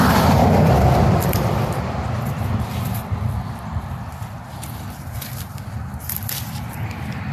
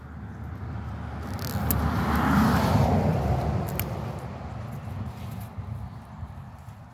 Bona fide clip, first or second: second